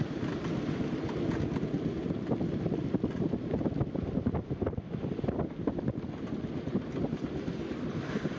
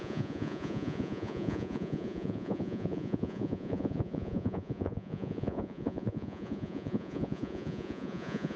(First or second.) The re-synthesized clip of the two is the second